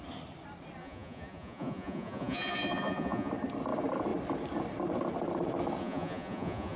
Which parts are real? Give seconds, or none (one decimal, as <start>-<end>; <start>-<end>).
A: 0.0-0.8; 3.3-5.8